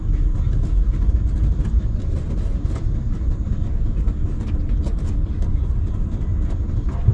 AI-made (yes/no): no